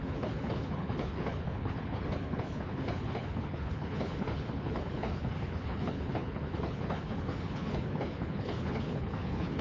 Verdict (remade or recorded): remade